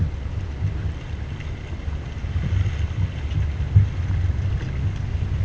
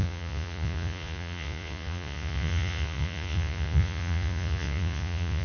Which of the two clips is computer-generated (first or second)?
second